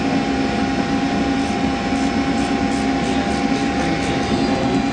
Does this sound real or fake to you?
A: real